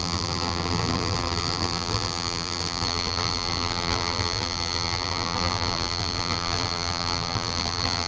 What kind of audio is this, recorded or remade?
remade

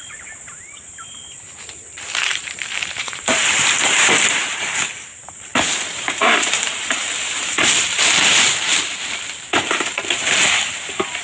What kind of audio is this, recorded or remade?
remade